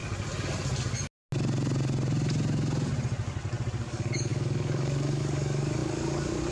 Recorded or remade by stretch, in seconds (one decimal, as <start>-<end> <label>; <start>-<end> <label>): 0.0-3.8 recorded; 3.8-6.5 remade

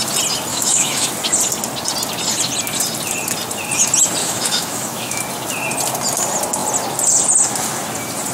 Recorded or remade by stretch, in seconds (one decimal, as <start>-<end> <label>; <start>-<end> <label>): 0.0-0.5 recorded; 0.5-1.1 remade; 1.1-4.2 recorded; 4.2-5.2 remade; 5.2-8.3 recorded